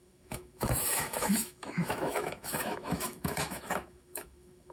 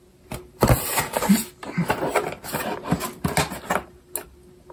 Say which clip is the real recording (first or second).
second